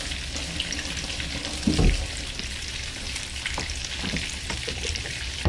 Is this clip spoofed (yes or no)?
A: no